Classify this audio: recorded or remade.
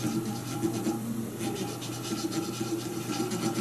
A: recorded